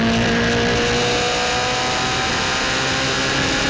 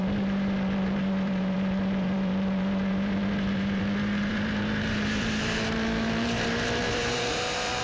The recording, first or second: first